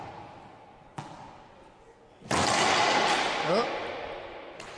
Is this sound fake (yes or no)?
no